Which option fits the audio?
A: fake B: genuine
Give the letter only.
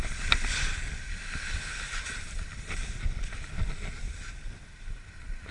B